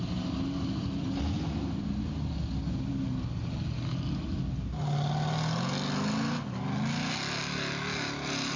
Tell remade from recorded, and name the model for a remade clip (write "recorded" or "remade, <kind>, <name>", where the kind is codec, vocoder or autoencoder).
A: recorded